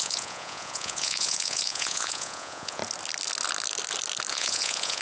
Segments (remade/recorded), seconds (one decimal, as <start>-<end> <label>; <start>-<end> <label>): 0.0-2.8 remade; 2.8-4.3 recorded; 4.3-5.0 remade